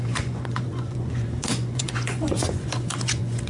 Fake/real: fake